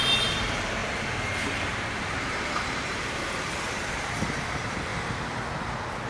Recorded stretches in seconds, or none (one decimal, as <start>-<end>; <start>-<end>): 4.9-6.1